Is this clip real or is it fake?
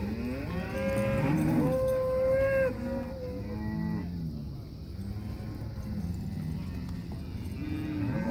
real